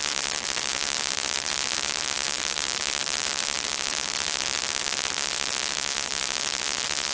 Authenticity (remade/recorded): remade